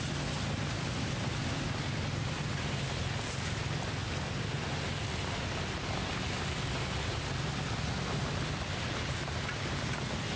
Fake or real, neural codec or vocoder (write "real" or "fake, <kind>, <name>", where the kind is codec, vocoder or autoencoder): real